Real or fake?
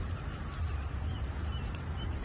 real